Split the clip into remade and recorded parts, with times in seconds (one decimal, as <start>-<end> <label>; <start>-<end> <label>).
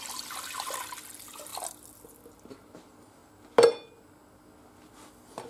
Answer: 0.0-5.5 recorded